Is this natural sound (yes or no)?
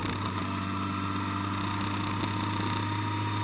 yes